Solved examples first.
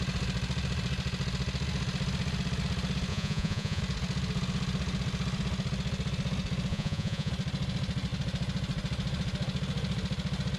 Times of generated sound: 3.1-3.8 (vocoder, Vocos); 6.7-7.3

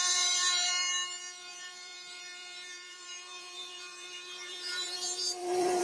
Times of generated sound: 0.0-0.9 (vocoder, BigVGAN v2); 1.5-5.8

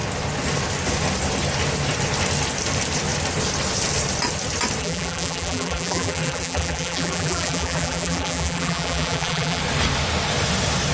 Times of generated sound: 4.8-9.6 (vocoder, BigVGAN v2)